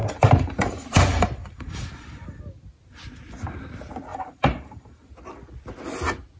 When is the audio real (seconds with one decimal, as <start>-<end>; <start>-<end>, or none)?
2.4-4.1; 5.1-6.4